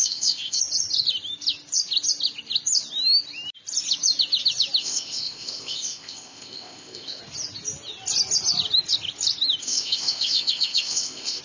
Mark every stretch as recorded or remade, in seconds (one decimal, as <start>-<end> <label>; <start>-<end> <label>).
0.0-0.6 remade; 0.6-4.8 recorded; 4.8-7.2 remade; 7.2-9.6 recorded; 9.6-11.4 remade